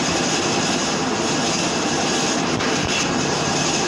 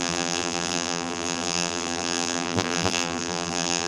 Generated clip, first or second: second